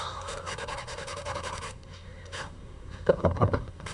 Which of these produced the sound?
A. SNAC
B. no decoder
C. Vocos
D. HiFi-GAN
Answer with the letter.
A